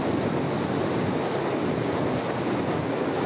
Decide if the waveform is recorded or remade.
recorded